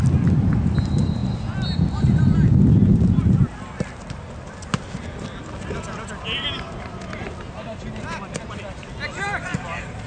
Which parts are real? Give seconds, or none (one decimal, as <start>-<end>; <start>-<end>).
0.0-10.1